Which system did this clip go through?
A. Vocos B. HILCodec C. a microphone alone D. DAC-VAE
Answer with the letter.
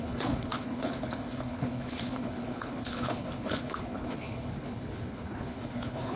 B